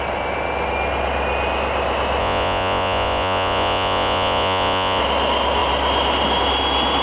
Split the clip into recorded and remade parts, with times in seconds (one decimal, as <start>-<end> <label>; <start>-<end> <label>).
0.0-2.2 recorded; 2.2-5.0 remade; 5.0-7.0 recorded